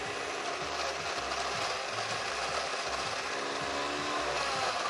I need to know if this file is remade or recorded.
recorded